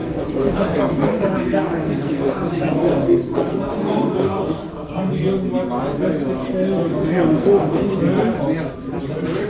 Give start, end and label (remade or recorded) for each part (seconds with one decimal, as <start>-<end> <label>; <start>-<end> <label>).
0.0-5.1 remade; 5.1-6.4 recorded; 6.4-8.0 remade; 8.0-9.5 recorded